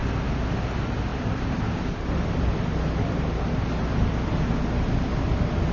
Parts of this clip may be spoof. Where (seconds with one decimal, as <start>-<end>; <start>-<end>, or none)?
1.1-4.5

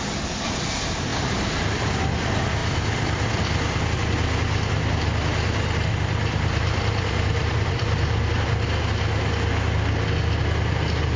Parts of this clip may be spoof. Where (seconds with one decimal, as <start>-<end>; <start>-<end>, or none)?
1.1-1.9; 2.6-3.9; 5.9-8.4